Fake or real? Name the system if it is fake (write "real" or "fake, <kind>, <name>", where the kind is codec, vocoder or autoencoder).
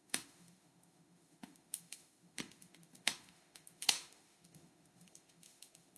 fake, autoencoder, DAC-VAE